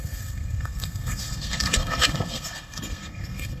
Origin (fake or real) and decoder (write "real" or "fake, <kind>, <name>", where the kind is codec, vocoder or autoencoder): fake, codec, SNAC